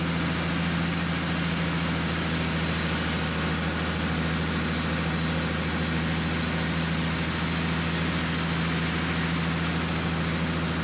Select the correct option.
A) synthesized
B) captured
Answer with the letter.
B